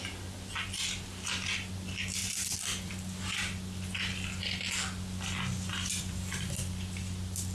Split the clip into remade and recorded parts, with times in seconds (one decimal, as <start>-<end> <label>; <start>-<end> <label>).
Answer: 0.0-2.2 recorded; 2.2-2.9 remade; 2.9-5.7 recorded; 5.7-7.0 remade; 7.0-7.5 recorded